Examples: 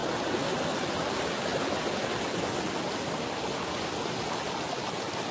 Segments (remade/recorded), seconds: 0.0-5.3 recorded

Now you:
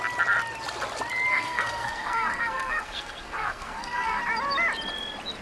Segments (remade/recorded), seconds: 0.0-1.3 recorded; 1.3-4.2 remade; 4.2-5.4 recorded